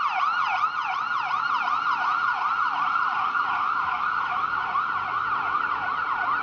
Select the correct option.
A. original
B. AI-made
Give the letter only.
A